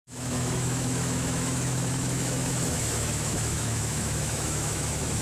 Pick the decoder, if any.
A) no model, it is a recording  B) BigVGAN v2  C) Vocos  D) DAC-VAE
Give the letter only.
D